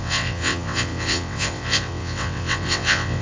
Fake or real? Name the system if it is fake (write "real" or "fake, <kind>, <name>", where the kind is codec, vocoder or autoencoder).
fake, vocoder, WaveNeXt